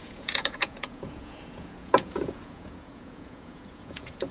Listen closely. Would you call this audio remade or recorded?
remade